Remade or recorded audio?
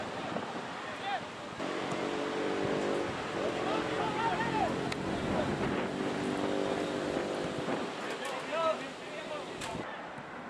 recorded